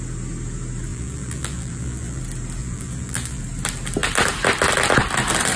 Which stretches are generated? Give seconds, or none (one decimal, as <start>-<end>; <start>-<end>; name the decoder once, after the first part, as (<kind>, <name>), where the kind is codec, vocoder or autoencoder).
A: 0.9-2.2 (vocoder, BigVGAN v2); 2.6-3.4